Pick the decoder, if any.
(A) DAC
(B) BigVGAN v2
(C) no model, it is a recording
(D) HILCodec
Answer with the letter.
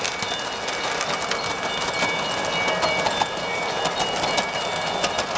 C